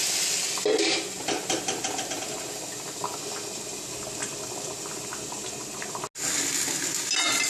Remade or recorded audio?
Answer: recorded